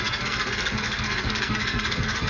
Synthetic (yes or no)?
yes